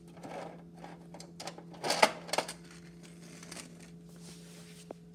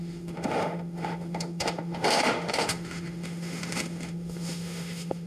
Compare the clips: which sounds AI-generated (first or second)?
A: second